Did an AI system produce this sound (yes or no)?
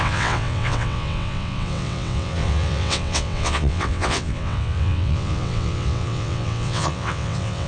yes